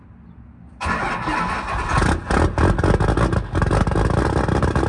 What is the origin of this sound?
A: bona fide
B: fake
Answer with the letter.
A